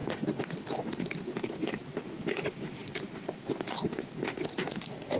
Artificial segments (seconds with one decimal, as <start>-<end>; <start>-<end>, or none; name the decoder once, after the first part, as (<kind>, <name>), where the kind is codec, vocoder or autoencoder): none